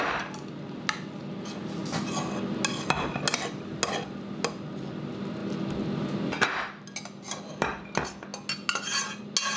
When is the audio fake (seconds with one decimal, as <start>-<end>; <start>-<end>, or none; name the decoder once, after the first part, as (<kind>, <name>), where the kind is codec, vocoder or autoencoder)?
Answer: none